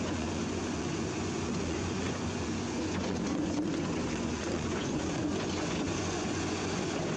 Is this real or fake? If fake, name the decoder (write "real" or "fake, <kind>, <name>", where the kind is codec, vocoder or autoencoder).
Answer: fake, vocoder, Vocos